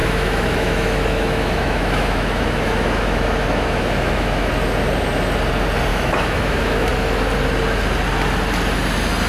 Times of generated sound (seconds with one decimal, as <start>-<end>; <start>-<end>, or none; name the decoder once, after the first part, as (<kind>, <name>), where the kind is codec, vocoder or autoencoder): 0.0-4.5 (autoencoder, DAC-VAE); 5.9-6.9